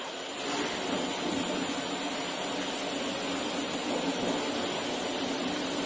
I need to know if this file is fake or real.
real